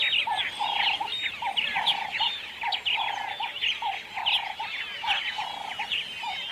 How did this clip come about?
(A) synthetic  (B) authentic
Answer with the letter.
B